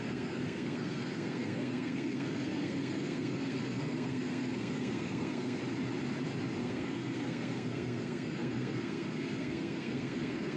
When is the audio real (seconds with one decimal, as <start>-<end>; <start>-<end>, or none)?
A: 5.6-6.6